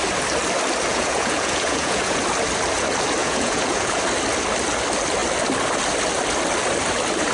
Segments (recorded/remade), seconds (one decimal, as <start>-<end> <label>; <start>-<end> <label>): 0.0-0.9 recorded; 0.9-2.2 remade; 2.2-3.2 recorded; 3.2-4.0 remade; 4.0-7.3 recorded